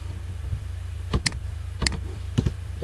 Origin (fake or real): fake